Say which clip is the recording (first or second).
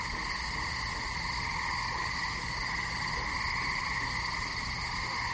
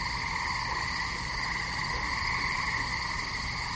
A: first